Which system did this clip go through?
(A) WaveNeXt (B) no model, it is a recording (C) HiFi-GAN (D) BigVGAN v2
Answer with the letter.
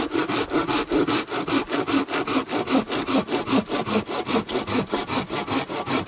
B